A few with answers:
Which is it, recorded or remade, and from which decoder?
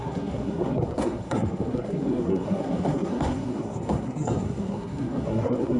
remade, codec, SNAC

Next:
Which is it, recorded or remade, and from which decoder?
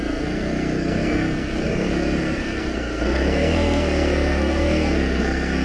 remade, codec, SNAC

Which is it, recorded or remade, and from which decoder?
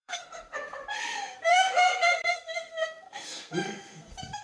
remade, codec, SNAC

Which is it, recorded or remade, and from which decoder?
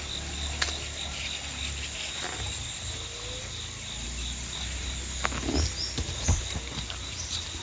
recorded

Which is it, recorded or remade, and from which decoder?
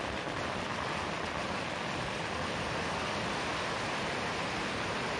recorded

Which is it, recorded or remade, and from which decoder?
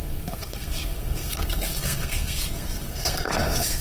remade, codec, SNAC